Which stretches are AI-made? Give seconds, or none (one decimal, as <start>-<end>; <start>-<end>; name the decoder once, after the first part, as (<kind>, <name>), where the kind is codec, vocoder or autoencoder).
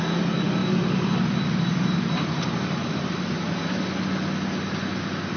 0.6-3.8 (vocoder, BigVGAN v2)